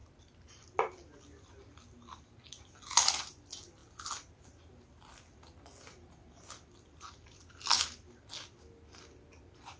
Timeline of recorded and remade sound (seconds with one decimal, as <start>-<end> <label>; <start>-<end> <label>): 0.0-9.8 recorded